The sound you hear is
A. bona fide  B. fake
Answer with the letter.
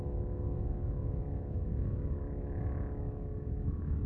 B